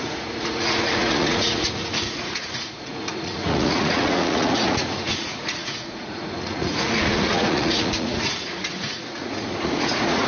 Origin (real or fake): fake